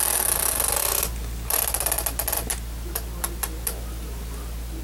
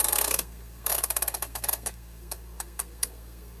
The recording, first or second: first